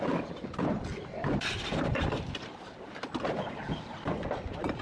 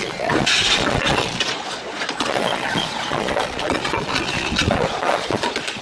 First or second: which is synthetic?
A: second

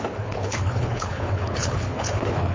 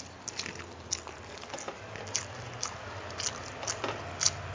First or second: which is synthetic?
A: first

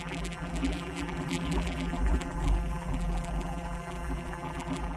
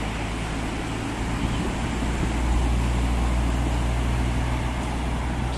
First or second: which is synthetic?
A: first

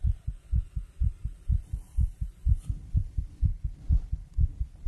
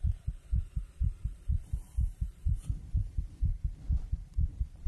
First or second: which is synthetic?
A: second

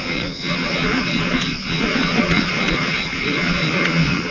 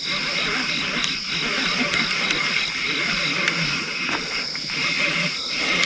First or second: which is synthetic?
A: first